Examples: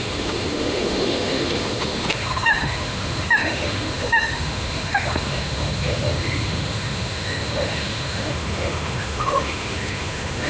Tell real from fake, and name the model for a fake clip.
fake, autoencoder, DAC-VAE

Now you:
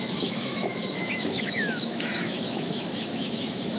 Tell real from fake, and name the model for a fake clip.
fake, autoencoder, DAC-VAE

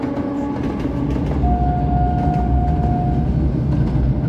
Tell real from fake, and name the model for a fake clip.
real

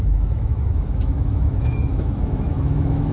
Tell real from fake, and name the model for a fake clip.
fake, autoencoder, DAC-VAE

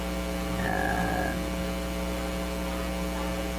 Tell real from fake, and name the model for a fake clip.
real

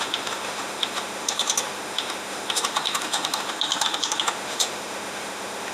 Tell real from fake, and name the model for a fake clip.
fake, autoencoder, DAC-VAE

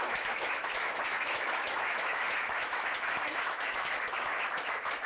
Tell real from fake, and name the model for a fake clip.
fake, autoencoder, DAC-VAE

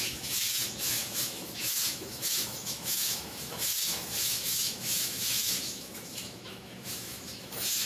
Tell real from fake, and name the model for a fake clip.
fake, autoencoder, DAC-VAE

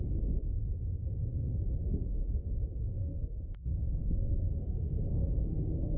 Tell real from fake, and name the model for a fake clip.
fake, autoencoder, DAC-VAE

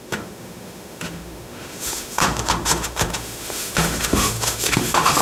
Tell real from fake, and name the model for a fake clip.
fake, autoencoder, DAC-VAE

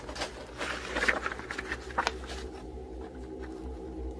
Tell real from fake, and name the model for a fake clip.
real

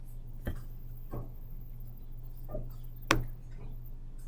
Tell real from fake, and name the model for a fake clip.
real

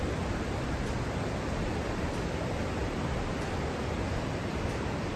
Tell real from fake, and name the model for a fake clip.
real